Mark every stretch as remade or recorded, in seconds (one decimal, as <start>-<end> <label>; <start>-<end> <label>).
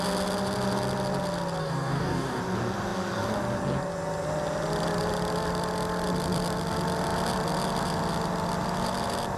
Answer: 0.0-1.6 recorded; 1.6-2.4 remade; 2.4-9.4 recorded